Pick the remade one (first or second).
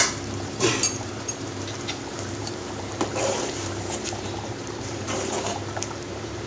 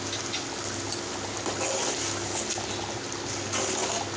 first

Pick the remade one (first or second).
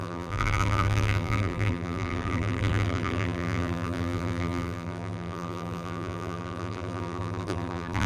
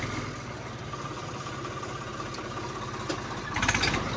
first